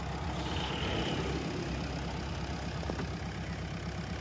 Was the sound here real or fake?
real